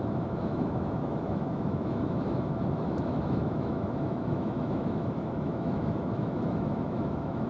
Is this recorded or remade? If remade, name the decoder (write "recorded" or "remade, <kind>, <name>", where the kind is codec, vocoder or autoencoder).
remade, autoencoder, DAC-VAE